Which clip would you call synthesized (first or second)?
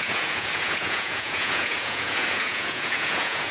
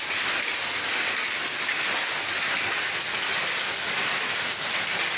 first